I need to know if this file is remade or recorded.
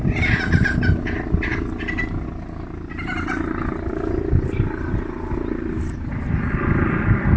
recorded